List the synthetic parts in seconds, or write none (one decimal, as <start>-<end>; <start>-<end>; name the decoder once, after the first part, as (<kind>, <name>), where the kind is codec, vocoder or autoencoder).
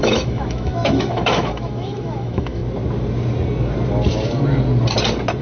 0.0-2.6 (autoencoder, DAC-VAE)